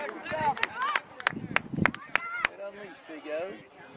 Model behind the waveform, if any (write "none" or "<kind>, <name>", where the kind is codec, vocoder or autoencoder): none